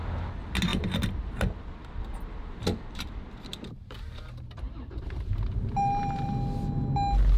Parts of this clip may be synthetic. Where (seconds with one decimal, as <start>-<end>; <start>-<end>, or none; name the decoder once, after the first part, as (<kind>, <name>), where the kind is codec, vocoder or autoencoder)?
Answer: 3.5-6.3 (vocoder, BigVGAN v2)